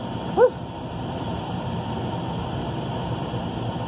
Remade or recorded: remade